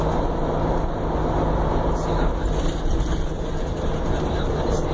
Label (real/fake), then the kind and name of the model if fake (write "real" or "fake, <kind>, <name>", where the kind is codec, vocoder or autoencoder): real